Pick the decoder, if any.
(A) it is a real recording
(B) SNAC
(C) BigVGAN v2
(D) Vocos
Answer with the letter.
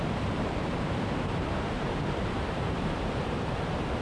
C